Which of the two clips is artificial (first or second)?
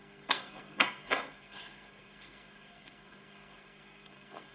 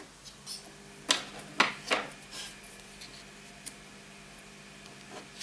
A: first